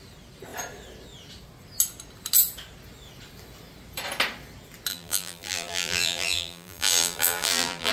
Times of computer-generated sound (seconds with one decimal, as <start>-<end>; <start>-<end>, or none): 4.9-7.9

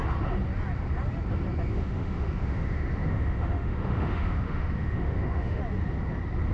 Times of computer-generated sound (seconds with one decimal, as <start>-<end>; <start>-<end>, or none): 1.7-5.6